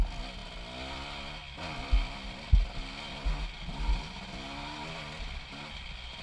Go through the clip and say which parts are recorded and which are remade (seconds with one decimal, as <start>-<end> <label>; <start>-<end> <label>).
0.0-6.2 recorded